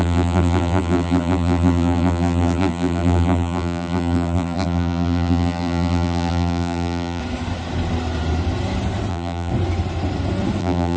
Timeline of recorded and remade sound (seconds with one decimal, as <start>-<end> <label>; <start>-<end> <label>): 0.0-7.2 remade; 7.2-9.1 recorded; 9.1-9.5 remade; 9.5-10.6 recorded; 10.6-11.0 remade